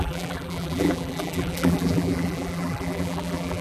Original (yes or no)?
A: no